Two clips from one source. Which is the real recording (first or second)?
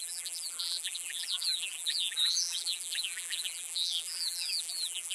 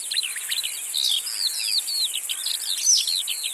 second